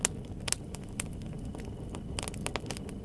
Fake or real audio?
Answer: real